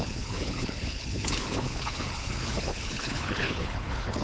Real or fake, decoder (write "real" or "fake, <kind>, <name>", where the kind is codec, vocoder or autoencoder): fake, codec, HILCodec